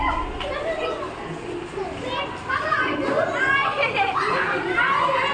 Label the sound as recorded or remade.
recorded